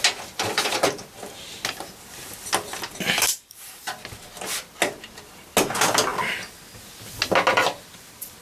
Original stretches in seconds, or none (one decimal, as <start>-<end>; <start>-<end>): 0.0-2.9; 3.7-8.4